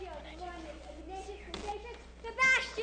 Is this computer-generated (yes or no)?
no